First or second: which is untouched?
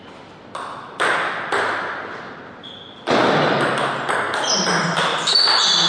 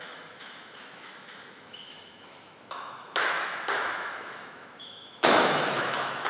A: first